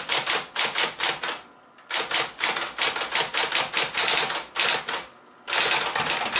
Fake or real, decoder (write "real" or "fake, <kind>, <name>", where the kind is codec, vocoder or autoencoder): real